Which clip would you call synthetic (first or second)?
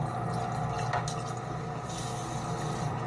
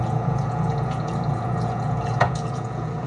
second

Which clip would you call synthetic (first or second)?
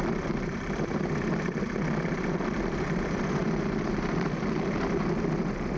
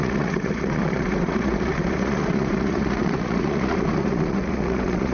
second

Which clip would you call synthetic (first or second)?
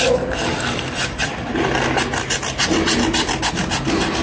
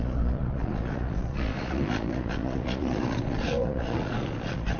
second